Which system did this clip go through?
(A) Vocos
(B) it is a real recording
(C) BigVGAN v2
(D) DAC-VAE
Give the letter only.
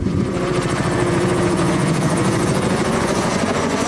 A